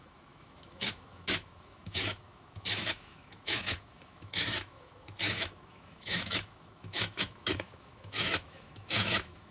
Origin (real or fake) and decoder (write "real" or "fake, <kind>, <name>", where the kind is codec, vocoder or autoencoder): fake, autoencoder, DAC-VAE